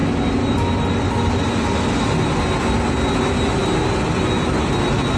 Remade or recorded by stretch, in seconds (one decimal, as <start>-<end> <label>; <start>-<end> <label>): 0.0-5.2 recorded